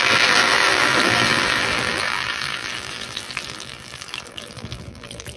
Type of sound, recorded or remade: remade